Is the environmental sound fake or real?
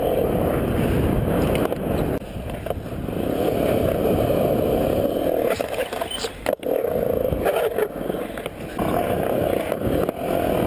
real